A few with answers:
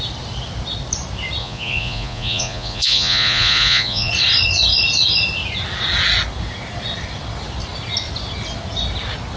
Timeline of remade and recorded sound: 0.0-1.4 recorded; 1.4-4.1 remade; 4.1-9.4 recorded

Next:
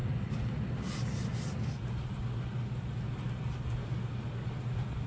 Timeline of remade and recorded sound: 0.0-5.1 recorded

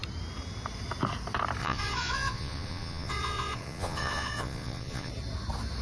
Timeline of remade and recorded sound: 0.0-1.6 recorded; 1.6-5.1 remade; 5.1-5.8 recorded

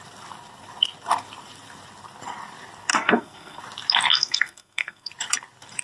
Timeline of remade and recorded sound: 0.0-2.9 recorded; 2.9-3.6 remade; 3.6-4.1 recorded; 4.1-5.1 remade; 5.1-5.8 recorded

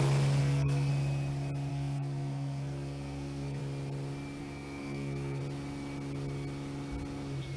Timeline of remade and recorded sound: 0.0-0.4 recorded; 0.4-0.9 remade; 0.9-1.7 recorded; 1.7-3.6 remade; 3.6-4.4 recorded; 4.4-5.4 remade; 5.4-7.6 recorded

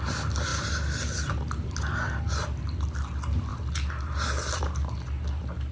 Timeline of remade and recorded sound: 0.0-5.7 recorded

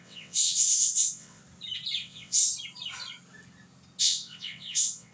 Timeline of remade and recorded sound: 0.0-1.4 remade; 1.4-2.0 recorded; 2.0-2.4 remade; 2.4-4.0 recorded; 4.0-5.1 remade

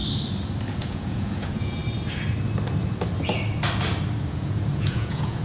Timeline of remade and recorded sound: 0.0-0.7 recorded; 0.7-1.8 remade; 1.8-4.3 recorded; 4.3-5.4 remade